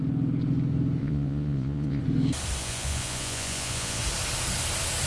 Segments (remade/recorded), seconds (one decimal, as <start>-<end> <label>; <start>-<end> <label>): 0.0-1.0 recorded; 1.0-2.0 remade; 2.0-2.6 recorded; 2.6-4.0 remade; 4.0-5.1 recorded